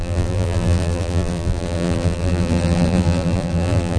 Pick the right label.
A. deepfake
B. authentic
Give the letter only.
A